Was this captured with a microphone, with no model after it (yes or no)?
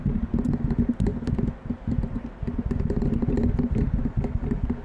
yes